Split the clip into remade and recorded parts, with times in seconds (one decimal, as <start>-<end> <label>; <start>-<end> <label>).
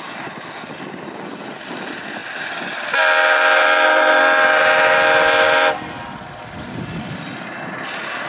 0.0-8.3 recorded